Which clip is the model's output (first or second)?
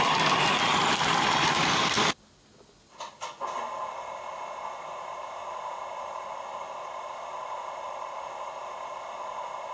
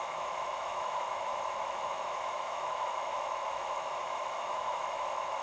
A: second